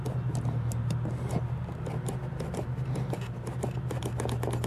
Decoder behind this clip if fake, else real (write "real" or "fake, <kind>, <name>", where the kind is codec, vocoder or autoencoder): real